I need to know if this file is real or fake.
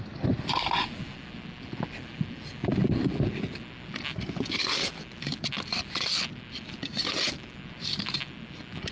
real